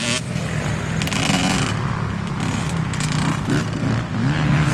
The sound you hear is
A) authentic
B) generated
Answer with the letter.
A